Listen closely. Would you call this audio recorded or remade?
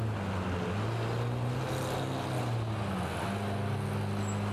recorded